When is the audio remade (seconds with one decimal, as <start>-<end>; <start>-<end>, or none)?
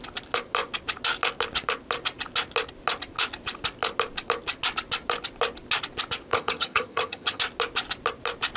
6.3-7.4